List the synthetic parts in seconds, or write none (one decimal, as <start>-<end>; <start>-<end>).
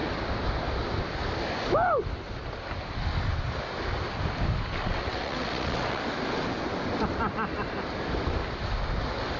4.8-6.0